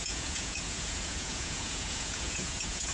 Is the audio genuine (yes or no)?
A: no